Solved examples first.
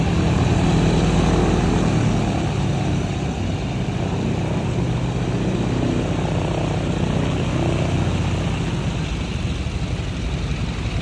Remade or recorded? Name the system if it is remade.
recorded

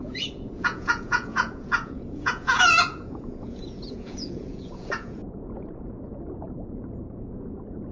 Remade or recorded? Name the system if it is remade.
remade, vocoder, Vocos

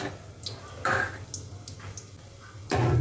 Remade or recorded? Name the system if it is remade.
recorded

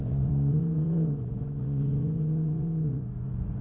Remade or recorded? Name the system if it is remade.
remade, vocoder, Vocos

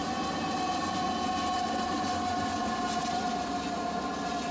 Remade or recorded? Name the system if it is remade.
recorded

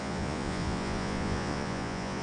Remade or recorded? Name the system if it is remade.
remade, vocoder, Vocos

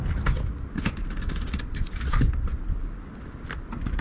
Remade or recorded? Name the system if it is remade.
recorded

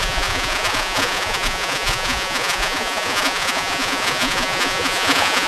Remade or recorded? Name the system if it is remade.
remade, vocoder, Vocos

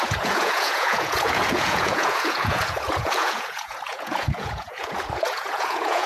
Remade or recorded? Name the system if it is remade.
remade, vocoder, Vocos